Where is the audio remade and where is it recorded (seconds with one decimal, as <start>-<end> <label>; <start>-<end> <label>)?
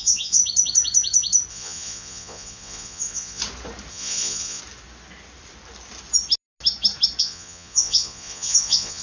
0.0-0.4 remade; 0.4-1.5 recorded; 1.5-3.4 remade; 3.4-3.9 recorded; 3.9-4.6 remade; 4.6-7.2 recorded; 7.2-9.0 remade